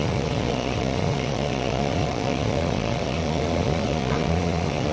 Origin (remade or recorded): remade